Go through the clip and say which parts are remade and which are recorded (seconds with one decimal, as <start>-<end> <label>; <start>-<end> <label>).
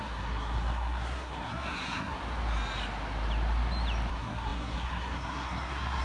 0.0-2.2 remade; 2.2-4.1 recorded; 4.1-6.0 remade